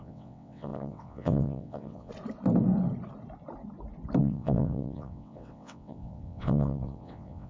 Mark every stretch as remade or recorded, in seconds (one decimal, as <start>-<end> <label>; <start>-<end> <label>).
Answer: 0.0-2.1 remade; 2.1-4.2 recorded; 4.2-7.5 remade